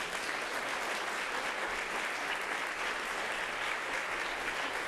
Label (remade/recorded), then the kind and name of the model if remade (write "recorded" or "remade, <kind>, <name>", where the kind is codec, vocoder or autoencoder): recorded